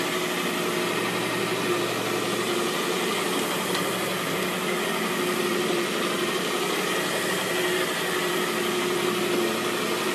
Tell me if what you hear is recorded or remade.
recorded